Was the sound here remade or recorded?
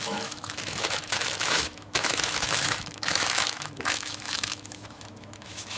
remade